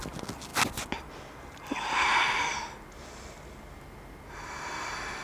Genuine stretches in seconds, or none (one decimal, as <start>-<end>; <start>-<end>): 0.0-5.2